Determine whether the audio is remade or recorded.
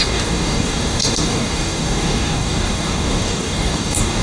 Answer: remade